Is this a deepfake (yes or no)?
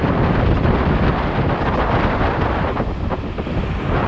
yes